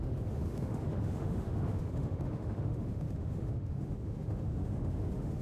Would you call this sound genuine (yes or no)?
no